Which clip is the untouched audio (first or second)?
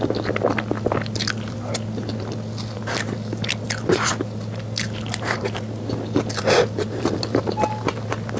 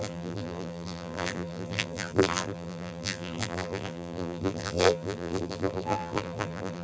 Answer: first